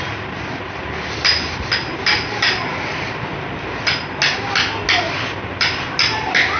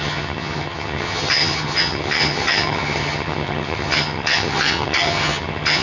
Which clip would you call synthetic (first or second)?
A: second